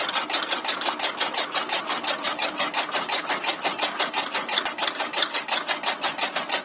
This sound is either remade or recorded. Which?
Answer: recorded